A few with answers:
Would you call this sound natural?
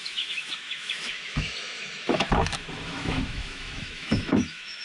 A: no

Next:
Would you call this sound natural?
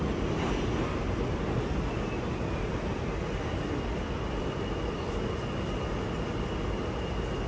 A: yes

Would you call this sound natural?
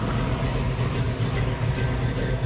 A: yes